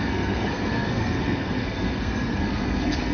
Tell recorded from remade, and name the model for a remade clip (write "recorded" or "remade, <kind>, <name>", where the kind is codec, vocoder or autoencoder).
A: remade, codec, SNAC